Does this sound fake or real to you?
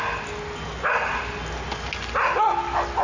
real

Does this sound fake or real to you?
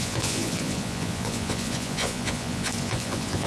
fake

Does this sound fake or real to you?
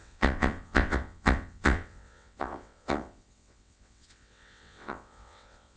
fake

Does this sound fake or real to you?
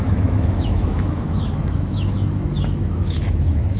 fake